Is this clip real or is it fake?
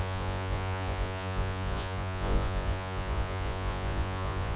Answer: fake